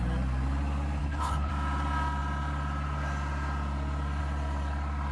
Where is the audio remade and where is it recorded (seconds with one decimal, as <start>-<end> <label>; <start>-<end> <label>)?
0.0-1.0 recorded; 1.0-1.5 remade; 1.5-5.1 recorded